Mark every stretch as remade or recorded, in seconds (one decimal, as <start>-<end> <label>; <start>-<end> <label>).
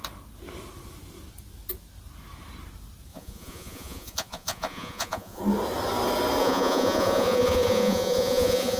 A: 0.0-3.1 recorded; 3.1-5.4 remade; 5.4-6.4 recorded; 6.4-8.8 remade